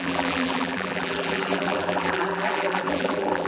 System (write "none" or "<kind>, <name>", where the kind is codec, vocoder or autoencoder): vocoder, BigVGAN v2